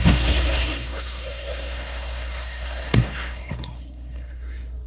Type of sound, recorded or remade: remade